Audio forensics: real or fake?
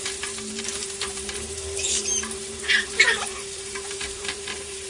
fake